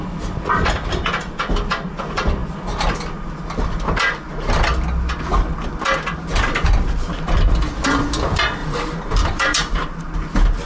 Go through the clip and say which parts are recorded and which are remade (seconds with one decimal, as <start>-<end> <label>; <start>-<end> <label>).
0.0-8.6 recorded; 8.6-10.0 remade; 10.0-10.7 recorded